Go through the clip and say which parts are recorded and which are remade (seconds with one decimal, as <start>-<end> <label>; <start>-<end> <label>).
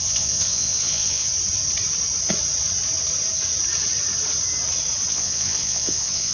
0.0-1.3 remade; 1.3-5.1 recorded; 5.1-6.3 remade